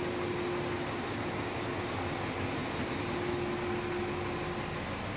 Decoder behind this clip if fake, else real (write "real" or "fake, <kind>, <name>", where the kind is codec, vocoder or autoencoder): real